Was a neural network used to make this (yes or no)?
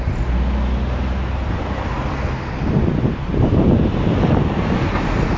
no